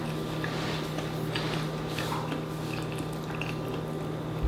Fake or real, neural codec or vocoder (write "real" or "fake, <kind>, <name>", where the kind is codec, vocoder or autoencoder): real